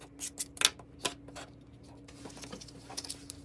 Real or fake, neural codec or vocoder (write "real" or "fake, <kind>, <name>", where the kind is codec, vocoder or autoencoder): real